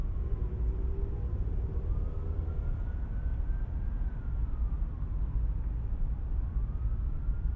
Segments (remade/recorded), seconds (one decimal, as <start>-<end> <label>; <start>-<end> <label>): 0.0-7.6 recorded